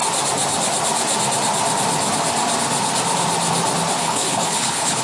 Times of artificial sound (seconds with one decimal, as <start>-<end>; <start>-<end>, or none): 4.0-5.0